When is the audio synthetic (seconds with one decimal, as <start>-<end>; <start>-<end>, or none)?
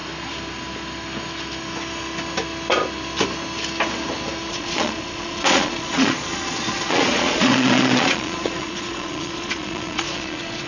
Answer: 4.5-10.7